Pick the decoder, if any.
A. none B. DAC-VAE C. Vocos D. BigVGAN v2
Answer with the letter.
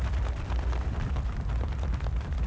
D